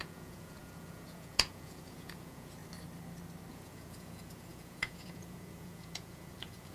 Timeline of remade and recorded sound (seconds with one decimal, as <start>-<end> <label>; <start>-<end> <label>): 0.0-2.6 remade; 2.6-3.5 recorded; 3.5-6.7 remade

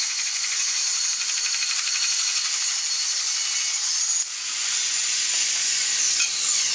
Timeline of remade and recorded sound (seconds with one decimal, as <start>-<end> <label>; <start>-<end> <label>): 0.0-0.8 remade; 0.8-4.3 recorded; 4.3-6.7 remade

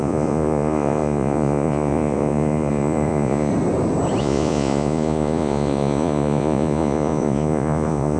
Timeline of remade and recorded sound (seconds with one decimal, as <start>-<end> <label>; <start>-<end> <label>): 0.0-3.5 remade; 3.5-4.2 recorded; 4.2-8.2 remade

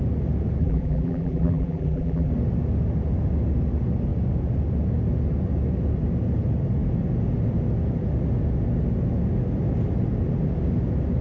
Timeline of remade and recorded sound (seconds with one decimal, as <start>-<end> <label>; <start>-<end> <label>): 0.0-0.6 recorded; 0.6-2.3 remade; 2.3-11.2 recorded

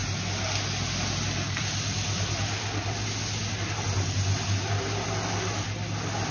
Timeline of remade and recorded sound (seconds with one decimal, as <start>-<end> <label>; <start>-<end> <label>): 0.0-6.3 recorded

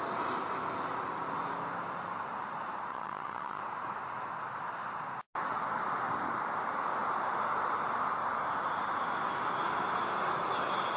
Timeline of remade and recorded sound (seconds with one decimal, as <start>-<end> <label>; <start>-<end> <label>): 0.0-2.9 recorded; 2.9-3.6 remade; 3.6-11.0 recorded

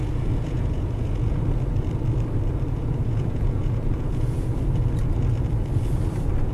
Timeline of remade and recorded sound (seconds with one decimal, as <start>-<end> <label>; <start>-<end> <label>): 0.0-1.4 remade; 1.4-2.8 recorded; 2.8-4.6 remade; 4.6-6.5 recorded